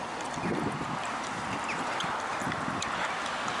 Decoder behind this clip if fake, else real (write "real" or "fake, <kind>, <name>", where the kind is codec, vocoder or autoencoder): real